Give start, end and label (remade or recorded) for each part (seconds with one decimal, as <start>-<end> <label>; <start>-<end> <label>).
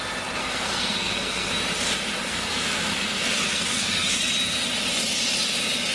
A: 0.0-0.4 recorded; 0.4-1.5 remade; 1.5-2.2 recorded; 2.2-4.2 remade; 4.2-5.9 recorded